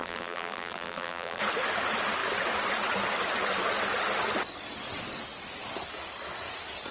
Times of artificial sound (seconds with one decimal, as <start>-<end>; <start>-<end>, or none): 0.0-1.4